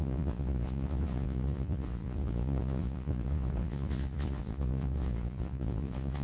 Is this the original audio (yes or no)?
no